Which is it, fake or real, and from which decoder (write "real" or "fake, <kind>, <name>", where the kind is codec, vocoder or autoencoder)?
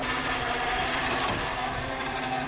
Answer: fake, vocoder, BigVGAN v2